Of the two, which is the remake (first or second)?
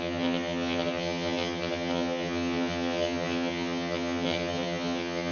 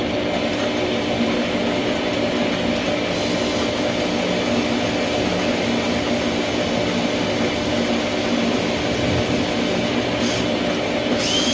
first